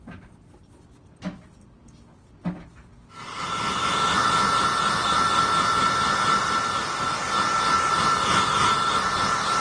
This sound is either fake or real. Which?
real